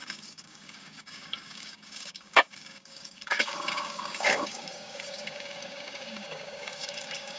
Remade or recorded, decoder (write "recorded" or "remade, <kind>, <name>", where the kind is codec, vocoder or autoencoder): remade, codec, DAC